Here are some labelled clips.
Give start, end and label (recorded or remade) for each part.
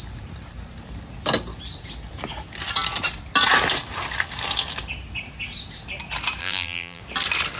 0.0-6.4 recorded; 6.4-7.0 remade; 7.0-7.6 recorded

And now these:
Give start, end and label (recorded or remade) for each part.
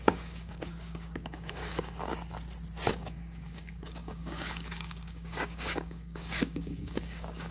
0.0-2.1 remade; 2.1-2.9 recorded; 2.9-7.5 remade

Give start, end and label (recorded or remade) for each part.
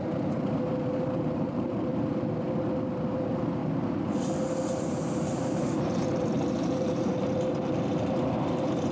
0.0-1.9 remade; 1.9-3.1 recorded; 3.1-3.6 remade; 3.6-4.8 recorded; 4.8-8.9 remade